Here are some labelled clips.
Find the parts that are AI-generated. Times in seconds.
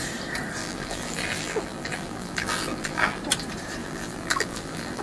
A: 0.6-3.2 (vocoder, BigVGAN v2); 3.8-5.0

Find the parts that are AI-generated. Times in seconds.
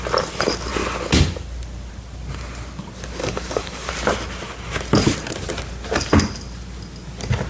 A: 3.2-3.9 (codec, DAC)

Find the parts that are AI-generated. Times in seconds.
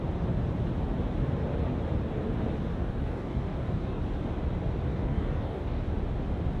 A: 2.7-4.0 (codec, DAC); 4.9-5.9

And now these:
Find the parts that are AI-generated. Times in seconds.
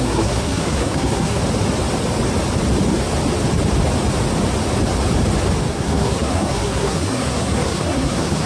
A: 0.0-1.4 (codec, SNAC); 5.7-8.5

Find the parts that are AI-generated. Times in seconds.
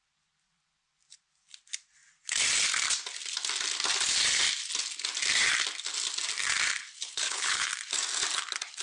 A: 6.8-7.7 (codec, HILCodec)